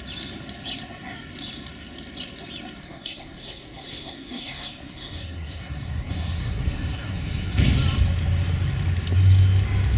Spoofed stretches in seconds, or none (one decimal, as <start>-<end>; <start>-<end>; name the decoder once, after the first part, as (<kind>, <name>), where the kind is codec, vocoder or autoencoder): 2.8-7.6 (codec, SNAC)